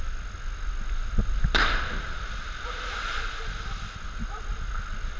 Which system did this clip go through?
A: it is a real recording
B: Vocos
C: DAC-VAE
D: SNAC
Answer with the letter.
A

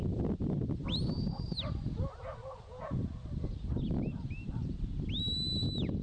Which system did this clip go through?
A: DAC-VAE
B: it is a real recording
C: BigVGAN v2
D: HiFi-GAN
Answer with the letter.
B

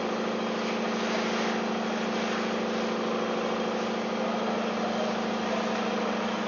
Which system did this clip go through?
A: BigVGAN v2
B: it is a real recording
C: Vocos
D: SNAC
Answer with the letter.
B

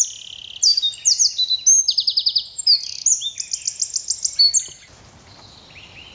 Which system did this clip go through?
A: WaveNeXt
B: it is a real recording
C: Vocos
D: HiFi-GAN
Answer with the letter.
B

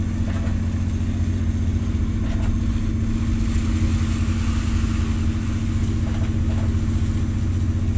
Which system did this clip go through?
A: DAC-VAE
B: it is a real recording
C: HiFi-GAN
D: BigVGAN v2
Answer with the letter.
B